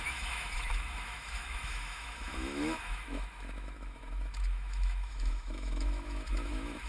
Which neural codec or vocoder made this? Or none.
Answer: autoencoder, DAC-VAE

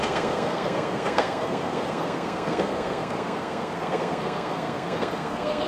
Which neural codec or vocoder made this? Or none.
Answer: codec, SNAC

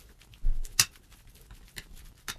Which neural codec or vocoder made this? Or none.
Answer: none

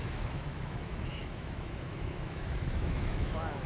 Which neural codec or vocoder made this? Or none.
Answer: autoencoder, DAC-VAE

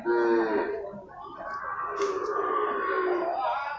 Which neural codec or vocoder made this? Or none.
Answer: none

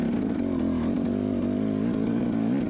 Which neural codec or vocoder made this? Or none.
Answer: none